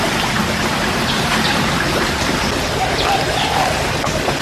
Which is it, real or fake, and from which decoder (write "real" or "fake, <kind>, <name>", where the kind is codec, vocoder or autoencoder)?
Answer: real